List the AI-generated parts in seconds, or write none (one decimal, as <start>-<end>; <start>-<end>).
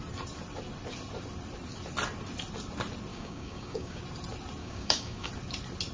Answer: 3.1-4.0; 4.6-5.3